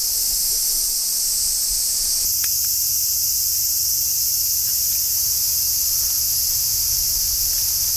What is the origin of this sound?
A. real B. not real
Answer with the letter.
A